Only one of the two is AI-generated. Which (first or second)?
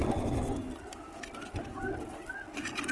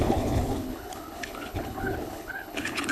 second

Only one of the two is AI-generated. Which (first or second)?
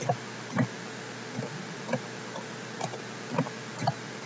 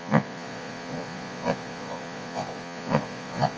second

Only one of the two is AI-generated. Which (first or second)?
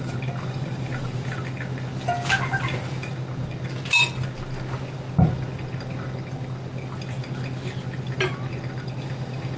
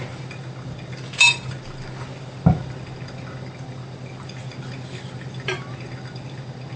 second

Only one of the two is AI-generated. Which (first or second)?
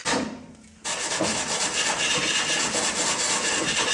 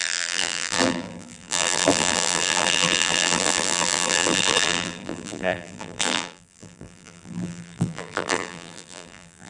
second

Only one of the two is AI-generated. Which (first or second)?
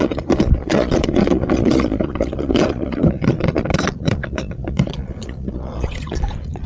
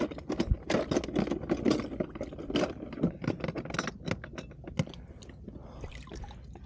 first